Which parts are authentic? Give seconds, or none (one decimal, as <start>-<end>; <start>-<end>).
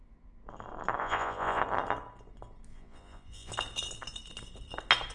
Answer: 0.0-1.0; 1.6-2.7; 3.5-5.1